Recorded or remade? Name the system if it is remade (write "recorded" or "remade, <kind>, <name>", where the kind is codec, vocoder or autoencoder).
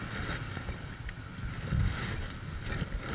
recorded